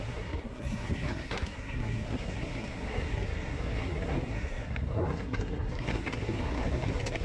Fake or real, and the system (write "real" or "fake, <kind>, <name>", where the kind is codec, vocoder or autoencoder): fake, codec, SNAC